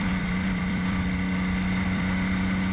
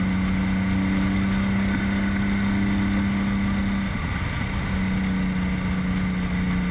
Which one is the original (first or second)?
second